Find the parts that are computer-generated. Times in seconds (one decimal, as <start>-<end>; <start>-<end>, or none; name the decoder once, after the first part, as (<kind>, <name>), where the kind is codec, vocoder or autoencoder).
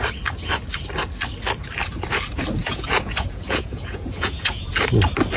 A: 2.6-4.7 (vocoder, Vocos)